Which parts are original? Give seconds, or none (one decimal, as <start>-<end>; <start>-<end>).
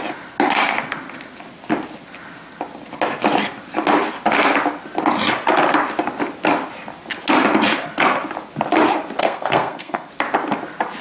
0.0-9.2; 10.1-11.0